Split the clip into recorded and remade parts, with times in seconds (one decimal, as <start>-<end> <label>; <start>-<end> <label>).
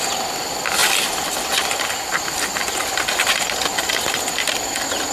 0.0-5.1 recorded